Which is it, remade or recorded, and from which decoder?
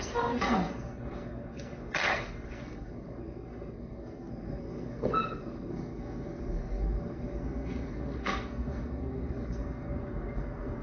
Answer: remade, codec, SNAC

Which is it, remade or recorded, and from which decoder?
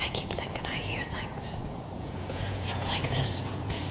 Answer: remade, vocoder, Vocos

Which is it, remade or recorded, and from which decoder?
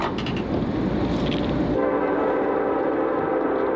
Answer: recorded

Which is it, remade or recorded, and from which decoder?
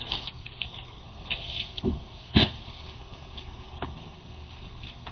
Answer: remade, codec, SNAC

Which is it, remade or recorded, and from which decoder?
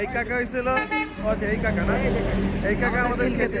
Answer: recorded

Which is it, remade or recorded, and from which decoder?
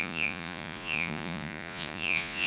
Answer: remade, vocoder, Vocos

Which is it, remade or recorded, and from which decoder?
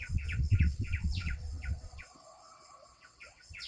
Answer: remade, vocoder, WaveNeXt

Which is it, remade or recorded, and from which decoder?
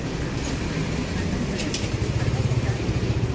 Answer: recorded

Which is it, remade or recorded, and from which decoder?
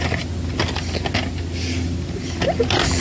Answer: recorded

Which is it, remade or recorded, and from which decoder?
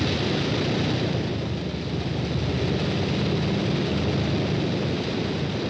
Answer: recorded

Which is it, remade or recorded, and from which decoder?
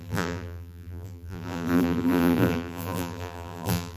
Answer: remade, vocoder, BigVGAN v2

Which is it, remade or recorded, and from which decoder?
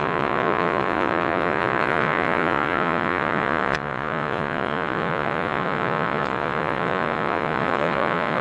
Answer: remade, vocoder, Vocos